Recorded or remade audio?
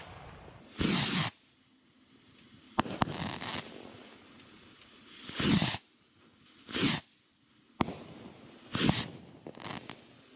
recorded